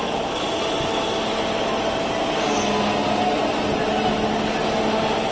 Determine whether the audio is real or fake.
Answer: real